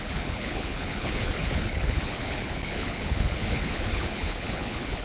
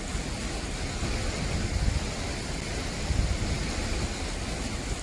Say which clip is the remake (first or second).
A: first